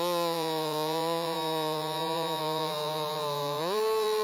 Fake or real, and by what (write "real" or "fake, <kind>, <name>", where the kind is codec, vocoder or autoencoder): fake, vocoder, BigVGAN v2